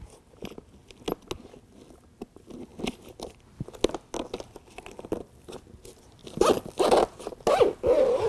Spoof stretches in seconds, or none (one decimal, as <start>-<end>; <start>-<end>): none

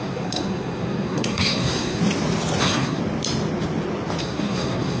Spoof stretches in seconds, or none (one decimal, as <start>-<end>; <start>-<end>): 0.0-2.0; 2.6-3.0; 4.2-5.0

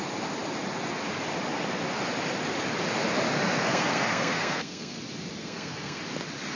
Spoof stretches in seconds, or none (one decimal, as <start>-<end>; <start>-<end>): 3.6-5.0; 5.4-6.0

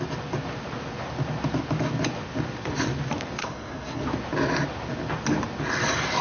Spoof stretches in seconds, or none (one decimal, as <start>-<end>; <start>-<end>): 3.4-4.0

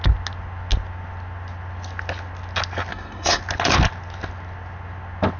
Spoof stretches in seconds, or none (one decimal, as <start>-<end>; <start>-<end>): 2.9-3.4

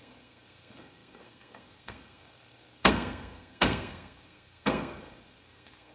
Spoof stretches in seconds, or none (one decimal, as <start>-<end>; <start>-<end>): 0.0-5.9

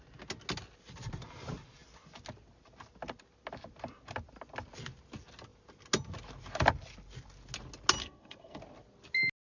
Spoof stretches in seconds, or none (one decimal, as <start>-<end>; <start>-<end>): 8.0-8.6